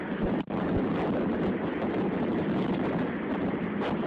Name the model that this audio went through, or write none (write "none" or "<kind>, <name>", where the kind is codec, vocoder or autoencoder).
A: none